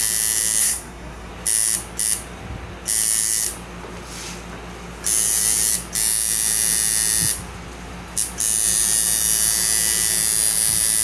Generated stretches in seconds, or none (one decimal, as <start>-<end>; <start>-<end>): 0.6-1.3